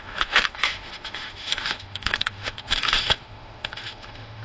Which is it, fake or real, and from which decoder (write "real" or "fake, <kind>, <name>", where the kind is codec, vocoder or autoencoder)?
fake, autoencoder, DAC-VAE